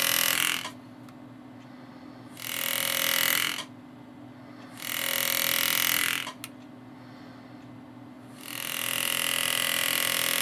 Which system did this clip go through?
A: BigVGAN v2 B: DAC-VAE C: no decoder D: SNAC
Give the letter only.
C